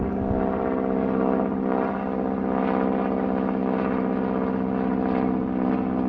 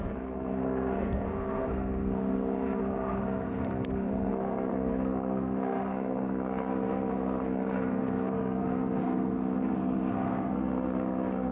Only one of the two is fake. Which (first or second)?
second